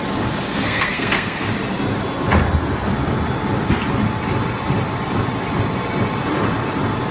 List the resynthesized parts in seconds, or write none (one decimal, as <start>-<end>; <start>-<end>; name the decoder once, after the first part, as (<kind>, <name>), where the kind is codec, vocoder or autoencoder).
0.5-1.5 (codec, SNAC)